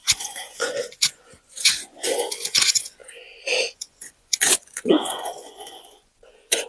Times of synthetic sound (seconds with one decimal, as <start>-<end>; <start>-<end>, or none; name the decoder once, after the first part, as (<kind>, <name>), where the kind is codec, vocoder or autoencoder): 0.0-6.7 (vocoder, Vocos)